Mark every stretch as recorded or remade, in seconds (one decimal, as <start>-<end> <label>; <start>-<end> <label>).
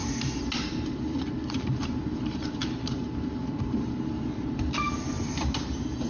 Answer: 0.0-0.6 recorded; 0.6-6.1 remade